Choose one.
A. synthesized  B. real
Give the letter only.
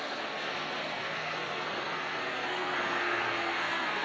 A